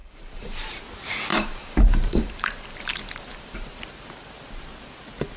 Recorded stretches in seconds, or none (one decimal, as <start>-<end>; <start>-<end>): 0.7-1.3; 3.8-5.4